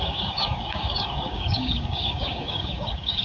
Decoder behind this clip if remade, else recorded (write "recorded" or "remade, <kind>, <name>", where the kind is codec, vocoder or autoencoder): remade, codec, DAC